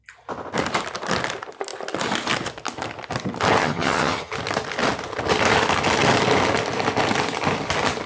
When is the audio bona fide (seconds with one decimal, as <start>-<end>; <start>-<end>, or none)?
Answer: 0.0-3.6; 4.3-8.1